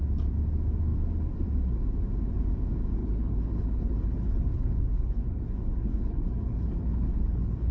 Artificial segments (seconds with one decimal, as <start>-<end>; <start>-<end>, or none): 3.0-7.7